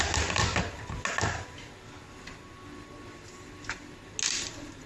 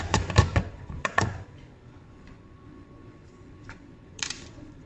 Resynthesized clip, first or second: second